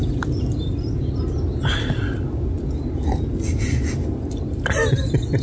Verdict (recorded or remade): recorded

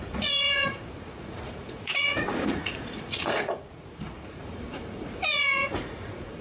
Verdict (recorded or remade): remade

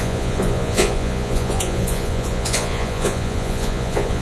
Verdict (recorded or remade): remade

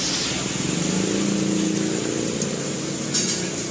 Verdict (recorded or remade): recorded